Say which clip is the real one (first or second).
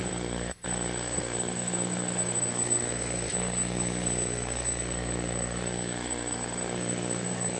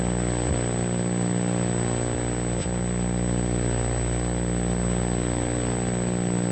second